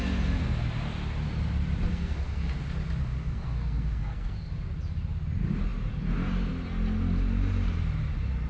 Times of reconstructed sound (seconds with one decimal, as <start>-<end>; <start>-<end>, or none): 1.9-2.6; 3.1-4.5